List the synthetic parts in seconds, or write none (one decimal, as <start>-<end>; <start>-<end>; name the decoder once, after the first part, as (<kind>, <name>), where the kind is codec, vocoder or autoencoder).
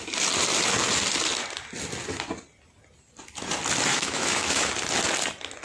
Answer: 3.9-4.7 (autoencoder, DAC-VAE)